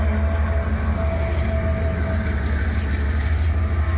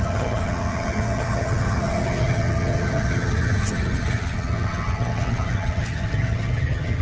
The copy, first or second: second